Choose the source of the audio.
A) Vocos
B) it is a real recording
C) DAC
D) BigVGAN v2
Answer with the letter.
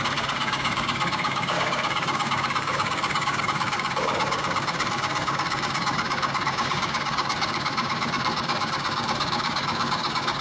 C